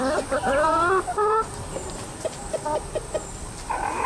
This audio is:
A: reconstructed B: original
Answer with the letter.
A